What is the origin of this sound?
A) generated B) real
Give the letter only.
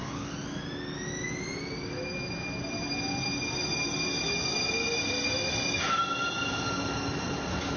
B